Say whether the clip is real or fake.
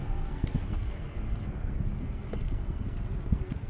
fake